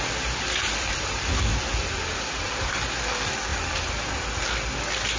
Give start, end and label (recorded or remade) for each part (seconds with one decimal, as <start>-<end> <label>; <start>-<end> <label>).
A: 0.0-0.6 recorded; 0.6-2.7 remade; 2.7-3.5 recorded; 3.5-4.1 remade; 4.1-5.2 recorded